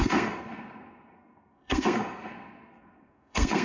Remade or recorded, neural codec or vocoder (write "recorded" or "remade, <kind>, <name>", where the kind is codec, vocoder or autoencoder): remade, codec, SNAC